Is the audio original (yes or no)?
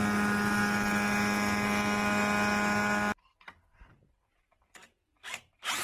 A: yes